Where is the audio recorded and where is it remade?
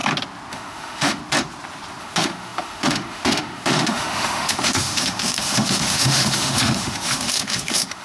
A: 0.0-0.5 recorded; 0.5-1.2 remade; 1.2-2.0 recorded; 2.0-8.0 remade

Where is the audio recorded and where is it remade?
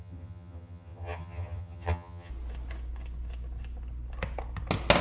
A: 0.0-2.3 remade; 2.3-5.0 recorded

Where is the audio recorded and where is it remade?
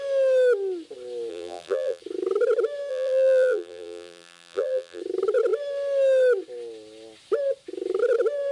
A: 0.0-1.3 recorded; 1.3-2.0 remade; 2.0-2.9 recorded; 2.9-5.0 remade; 5.0-8.5 recorded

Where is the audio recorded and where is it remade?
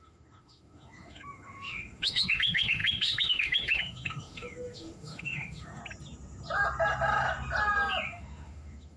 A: 0.0-5.8 remade; 5.8-8.1 recorded; 8.1-9.0 remade